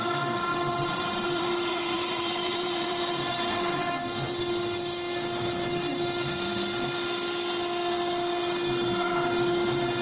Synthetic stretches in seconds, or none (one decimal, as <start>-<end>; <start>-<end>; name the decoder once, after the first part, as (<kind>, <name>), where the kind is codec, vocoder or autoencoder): 0.5-3.8 (vocoder, BigVGAN v2)